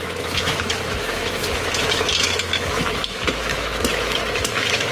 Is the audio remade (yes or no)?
yes